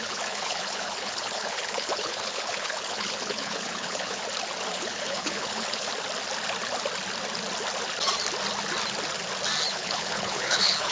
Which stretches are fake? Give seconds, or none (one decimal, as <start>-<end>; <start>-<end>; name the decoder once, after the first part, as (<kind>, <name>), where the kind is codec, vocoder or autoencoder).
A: 0.0-4.2 (codec, HILCodec); 4.7-5.9; 9.7-10.9